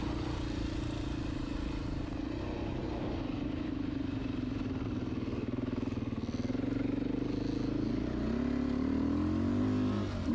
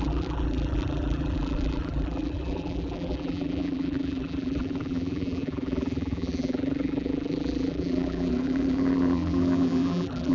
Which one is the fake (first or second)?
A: second